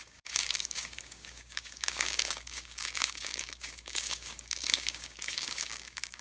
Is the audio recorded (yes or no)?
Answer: no